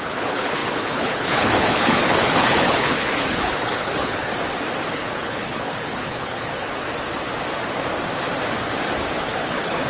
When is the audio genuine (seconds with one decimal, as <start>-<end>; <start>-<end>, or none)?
4.3-4.9; 6.8-9.2